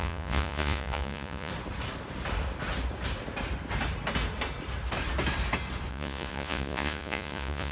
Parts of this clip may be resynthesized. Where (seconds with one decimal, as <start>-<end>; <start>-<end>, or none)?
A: 0.0-1.5; 5.9-7.7

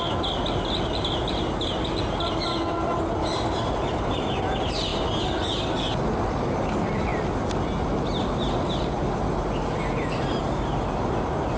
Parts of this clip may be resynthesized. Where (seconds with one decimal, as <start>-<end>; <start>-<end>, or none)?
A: none

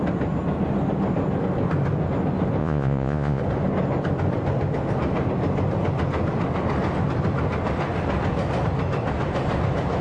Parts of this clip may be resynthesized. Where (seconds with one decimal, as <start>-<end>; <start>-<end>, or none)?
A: 2.6-3.4

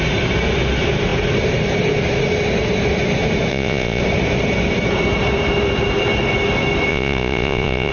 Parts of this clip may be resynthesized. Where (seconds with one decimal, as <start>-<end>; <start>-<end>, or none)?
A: 3.5-4.0; 6.9-7.9

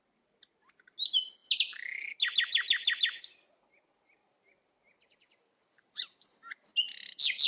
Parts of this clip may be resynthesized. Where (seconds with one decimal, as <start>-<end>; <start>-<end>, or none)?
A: none